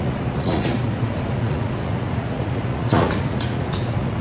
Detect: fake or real fake